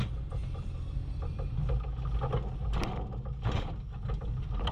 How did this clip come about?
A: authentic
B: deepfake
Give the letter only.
A